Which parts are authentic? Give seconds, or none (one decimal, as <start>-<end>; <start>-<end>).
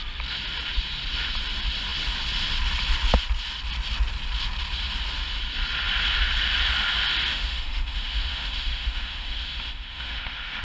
0.0-7.3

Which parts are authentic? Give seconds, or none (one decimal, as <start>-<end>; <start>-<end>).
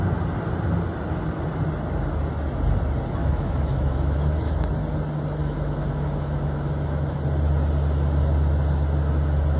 0.0-3.2; 4.7-5.4; 7.2-9.6